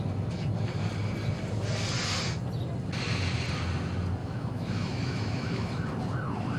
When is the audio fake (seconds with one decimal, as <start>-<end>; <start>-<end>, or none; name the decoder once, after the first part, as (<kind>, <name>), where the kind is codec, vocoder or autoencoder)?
4.2-5.7 (autoencoder, DAC-VAE)

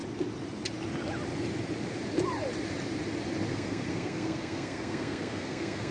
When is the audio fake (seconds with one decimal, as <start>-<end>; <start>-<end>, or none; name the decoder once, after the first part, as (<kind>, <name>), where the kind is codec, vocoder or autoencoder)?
3.5-5.9 (codec, SNAC)